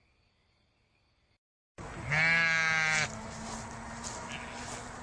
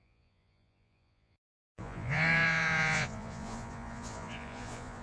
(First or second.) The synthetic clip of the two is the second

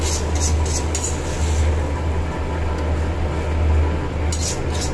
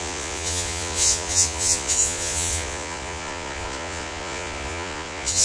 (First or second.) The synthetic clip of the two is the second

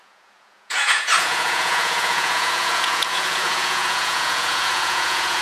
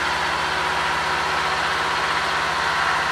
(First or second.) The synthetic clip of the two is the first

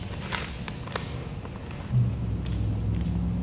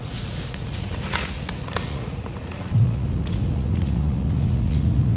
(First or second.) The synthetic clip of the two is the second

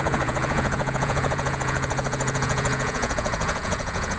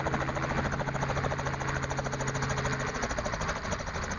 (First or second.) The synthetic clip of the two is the first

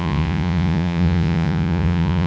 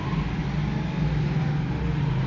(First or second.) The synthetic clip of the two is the first